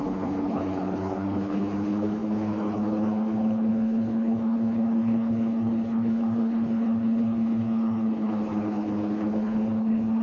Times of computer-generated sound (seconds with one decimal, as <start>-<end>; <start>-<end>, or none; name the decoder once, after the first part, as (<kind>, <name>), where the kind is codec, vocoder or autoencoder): 0.0-10.2 (codec, HILCodec)